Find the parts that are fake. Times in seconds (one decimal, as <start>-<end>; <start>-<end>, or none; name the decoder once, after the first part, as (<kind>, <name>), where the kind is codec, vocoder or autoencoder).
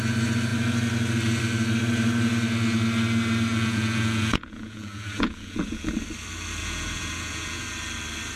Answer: 3.5-5.9 (vocoder, Vocos); 6.6-7.6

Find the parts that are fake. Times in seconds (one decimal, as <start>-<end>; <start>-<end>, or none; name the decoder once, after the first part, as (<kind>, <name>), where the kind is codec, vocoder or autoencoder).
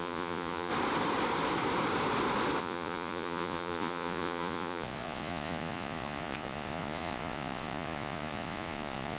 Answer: 0.0-0.7 (vocoder, Vocos); 2.6-9.2